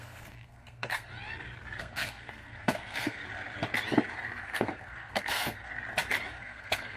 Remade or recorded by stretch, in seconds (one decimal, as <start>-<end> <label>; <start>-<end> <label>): 0.0-1.1 remade; 1.1-1.8 recorded; 1.8-3.2 remade; 3.2-4.4 recorded; 4.4-5.7 remade; 5.7-6.3 recorded; 6.3-7.0 remade